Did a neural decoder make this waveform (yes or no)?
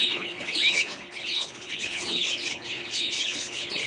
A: yes